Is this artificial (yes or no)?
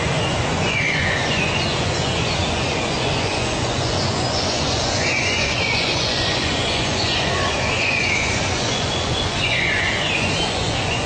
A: yes